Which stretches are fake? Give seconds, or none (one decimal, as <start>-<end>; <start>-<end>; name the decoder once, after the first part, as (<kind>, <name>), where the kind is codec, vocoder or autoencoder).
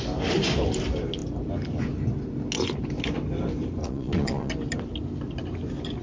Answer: 3.8-4.5 (vocoder, Vocos)